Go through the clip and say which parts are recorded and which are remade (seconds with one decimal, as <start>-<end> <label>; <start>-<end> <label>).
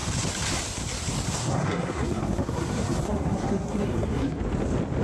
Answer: 0.0-1.4 recorded; 1.4-4.4 remade; 4.4-5.0 recorded